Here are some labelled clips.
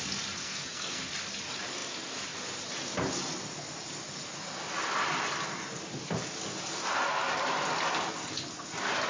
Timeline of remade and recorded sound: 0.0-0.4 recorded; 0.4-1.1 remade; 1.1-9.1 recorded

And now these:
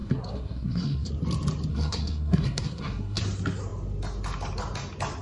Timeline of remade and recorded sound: 0.0-1.1 remade; 1.1-1.7 recorded; 1.7-3.2 remade; 3.2-5.2 recorded

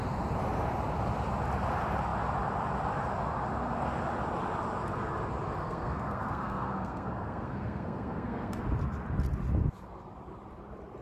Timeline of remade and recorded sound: 0.0-5.6 recorded; 5.6-8.6 remade; 8.6-11.0 recorded

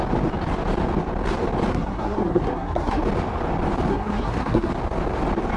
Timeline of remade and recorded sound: 0.0-1.7 recorded; 1.7-3.0 remade; 3.0-3.9 recorded; 3.9-4.7 remade; 4.7-5.6 recorded